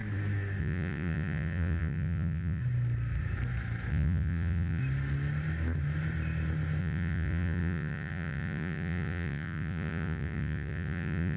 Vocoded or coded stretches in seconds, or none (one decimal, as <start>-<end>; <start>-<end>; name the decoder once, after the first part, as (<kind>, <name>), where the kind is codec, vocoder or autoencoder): 0.6-2.6 (vocoder, Vocos); 3.9-4.8; 6.8-11.4